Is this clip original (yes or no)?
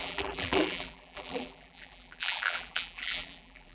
no